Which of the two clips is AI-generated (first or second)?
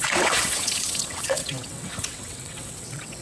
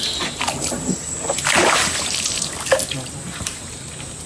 first